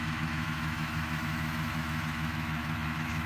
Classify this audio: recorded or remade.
remade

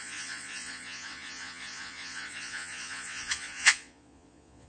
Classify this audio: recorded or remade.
remade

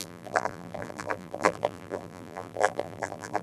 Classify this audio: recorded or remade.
remade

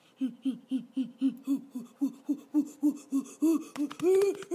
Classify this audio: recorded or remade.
recorded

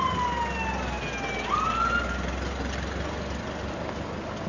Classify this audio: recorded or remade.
recorded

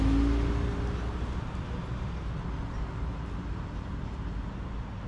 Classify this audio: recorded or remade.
recorded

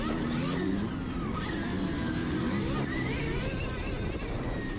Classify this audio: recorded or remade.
recorded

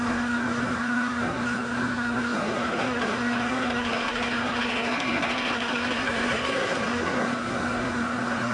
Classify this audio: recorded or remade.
remade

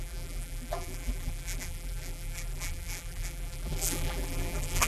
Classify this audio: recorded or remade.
remade